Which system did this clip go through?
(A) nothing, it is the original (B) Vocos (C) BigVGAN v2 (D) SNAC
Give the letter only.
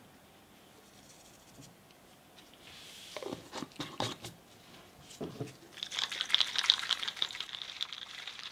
A